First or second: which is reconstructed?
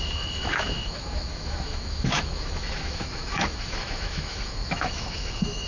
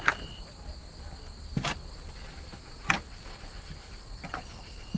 first